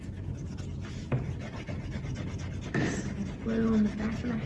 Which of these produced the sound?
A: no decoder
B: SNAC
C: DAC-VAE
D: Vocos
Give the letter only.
A